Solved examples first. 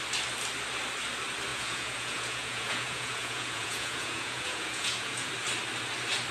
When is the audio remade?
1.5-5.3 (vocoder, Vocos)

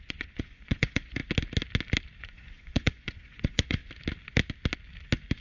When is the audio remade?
0.0-1.2 (vocoder, Vocos); 2.2-3.8

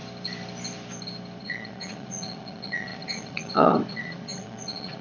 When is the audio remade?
1.4-5.0 (vocoder, Vocos)

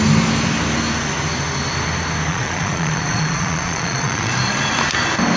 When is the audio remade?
2.3-4.3 (vocoder, Vocos)